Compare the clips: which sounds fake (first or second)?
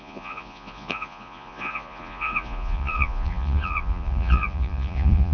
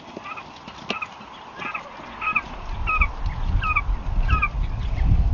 first